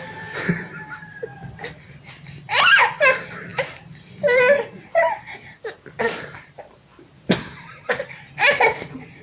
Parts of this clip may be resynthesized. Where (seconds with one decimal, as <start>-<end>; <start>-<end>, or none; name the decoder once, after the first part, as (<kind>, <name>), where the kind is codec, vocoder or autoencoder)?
0.0-1.3 (vocoder, BigVGAN v2); 2.1-9.2